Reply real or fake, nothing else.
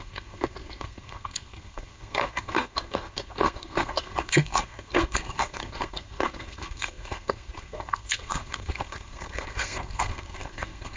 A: fake